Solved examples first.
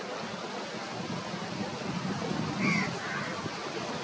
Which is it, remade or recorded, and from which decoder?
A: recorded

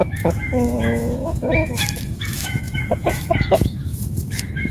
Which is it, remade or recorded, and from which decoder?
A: remade, autoencoder, DAC-VAE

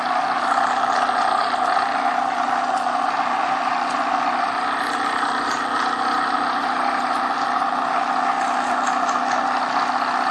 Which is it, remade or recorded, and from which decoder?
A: recorded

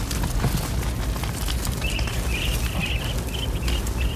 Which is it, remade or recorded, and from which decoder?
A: recorded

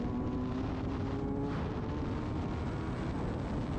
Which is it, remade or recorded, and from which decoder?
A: recorded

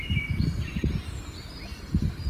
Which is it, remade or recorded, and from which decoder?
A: recorded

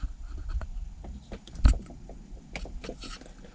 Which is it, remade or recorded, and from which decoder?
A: recorded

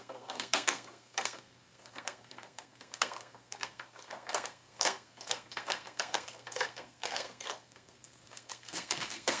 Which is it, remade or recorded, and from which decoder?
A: remade, codec, SNAC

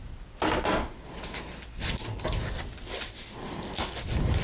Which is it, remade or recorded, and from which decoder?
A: recorded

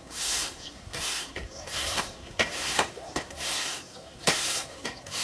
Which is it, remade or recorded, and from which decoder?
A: remade, codec, SNAC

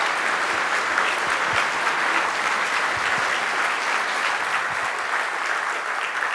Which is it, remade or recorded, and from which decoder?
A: recorded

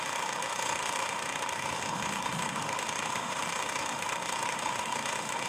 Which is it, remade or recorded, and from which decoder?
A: remade, autoencoder, DAC-VAE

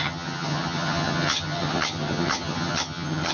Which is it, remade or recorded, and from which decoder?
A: remade, vocoder, HiFi-GAN